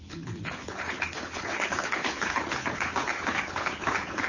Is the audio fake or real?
fake